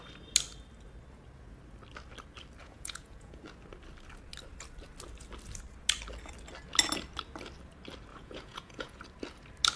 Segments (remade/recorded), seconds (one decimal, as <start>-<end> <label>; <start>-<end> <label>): 0.0-2.6 recorded; 2.6-3.4 remade; 3.4-8.1 recorded; 8.1-9.0 remade; 9.0-9.8 recorded